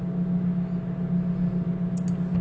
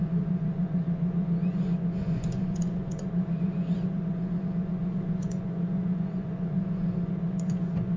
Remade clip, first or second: second